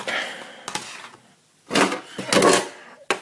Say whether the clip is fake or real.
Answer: real